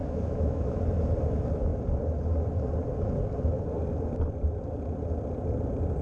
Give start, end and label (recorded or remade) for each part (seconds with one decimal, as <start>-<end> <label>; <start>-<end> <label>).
0.0-0.8 remade; 0.8-6.0 recorded